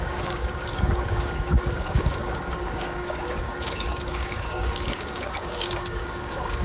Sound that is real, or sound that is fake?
fake